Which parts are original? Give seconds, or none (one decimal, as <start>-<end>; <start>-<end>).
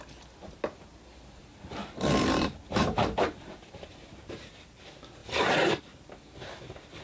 0.0-1.4; 4.5-5.2; 5.8-7.0